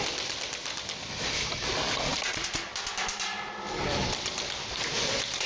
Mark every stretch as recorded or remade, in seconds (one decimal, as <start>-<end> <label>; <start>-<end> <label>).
0.0-2.1 recorded; 2.1-2.7 remade; 2.7-4.0 recorded; 4.0-4.8 remade; 4.8-5.5 recorded